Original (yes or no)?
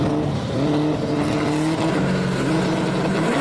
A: yes